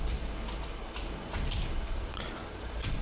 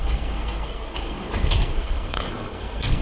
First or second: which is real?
first